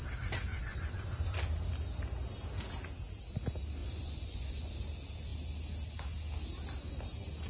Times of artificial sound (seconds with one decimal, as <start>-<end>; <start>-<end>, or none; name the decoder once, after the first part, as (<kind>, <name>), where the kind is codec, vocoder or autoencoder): 0.5-1.0 (vocoder, Vocos); 3.8-4.7